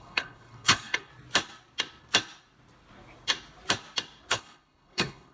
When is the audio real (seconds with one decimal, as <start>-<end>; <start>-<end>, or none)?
1.1-4.3